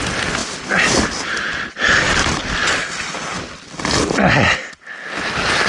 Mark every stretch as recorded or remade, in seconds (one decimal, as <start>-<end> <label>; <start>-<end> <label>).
0.0-5.7 recorded